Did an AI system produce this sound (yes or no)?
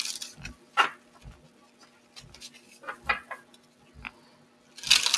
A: no